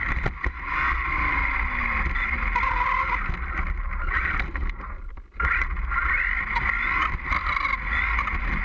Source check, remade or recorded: recorded